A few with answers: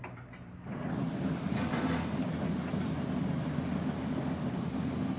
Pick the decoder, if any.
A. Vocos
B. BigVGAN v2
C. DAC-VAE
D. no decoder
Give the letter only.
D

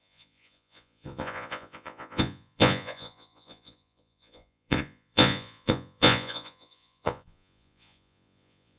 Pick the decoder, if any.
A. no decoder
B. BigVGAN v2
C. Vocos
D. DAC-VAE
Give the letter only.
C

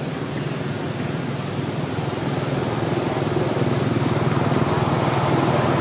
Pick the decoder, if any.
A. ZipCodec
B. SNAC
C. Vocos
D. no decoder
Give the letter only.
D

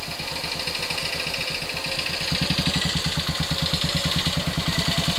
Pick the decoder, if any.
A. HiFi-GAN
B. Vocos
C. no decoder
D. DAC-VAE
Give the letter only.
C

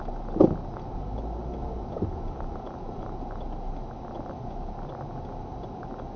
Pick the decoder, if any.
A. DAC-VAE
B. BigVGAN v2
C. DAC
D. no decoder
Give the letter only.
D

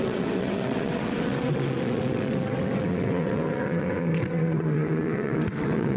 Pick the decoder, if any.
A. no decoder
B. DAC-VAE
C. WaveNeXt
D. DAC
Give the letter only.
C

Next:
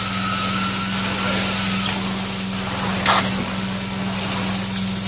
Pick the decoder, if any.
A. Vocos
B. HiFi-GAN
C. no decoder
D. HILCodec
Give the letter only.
C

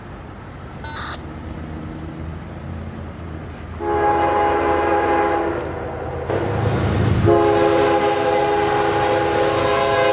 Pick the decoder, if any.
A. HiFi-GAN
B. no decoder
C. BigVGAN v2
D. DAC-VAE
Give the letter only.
B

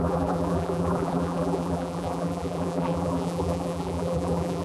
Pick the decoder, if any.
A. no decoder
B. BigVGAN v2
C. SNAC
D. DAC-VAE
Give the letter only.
B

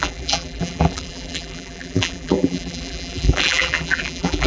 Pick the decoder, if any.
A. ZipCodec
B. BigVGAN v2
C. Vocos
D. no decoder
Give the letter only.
B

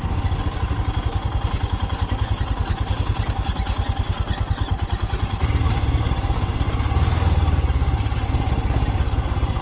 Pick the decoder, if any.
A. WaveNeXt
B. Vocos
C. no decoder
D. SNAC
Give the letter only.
C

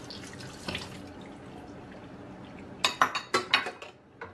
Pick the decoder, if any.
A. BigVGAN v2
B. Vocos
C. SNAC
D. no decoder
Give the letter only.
D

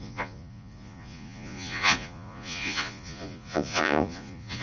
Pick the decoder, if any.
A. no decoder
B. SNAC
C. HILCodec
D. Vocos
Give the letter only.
D